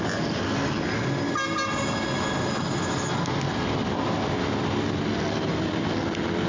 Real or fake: real